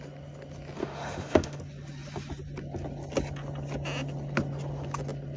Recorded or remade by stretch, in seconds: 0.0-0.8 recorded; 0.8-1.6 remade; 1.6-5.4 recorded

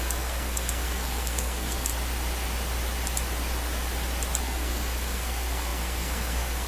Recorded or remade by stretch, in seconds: 0.0-1.9 remade; 1.9-4.4 recorded; 4.4-6.7 remade

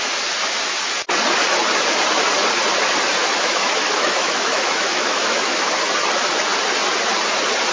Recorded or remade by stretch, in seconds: 0.0-3.2 recorded; 3.2-5.7 remade; 5.7-7.7 recorded

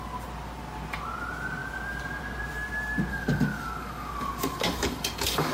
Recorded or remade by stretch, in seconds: 0.0-3.1 recorded; 3.1-5.5 remade